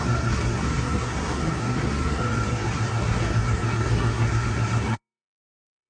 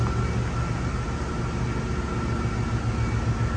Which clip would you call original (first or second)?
second